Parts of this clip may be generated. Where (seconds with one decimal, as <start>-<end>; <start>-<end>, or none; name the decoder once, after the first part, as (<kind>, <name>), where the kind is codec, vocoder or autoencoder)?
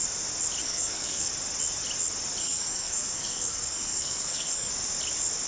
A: 0.6-1.3 (codec, SNAC); 2.4-4.7